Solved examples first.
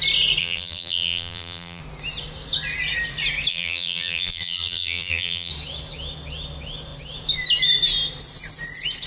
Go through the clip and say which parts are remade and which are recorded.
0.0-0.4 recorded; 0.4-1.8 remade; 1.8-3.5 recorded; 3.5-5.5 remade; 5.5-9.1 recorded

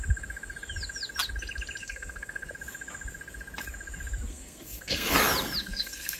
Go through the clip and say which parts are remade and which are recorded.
0.0-1.8 recorded; 1.8-2.5 remade; 2.5-4.3 recorded; 4.3-5.1 remade; 5.1-5.6 recorded; 5.6-6.2 remade

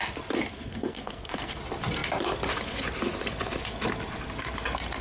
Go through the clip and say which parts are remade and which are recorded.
0.0-0.5 recorded; 0.5-1.6 remade; 1.6-5.0 recorded

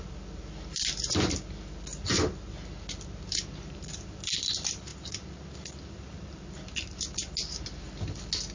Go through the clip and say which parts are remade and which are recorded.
0.0-8.5 recorded